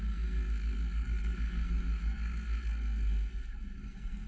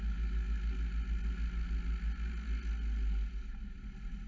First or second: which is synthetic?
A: first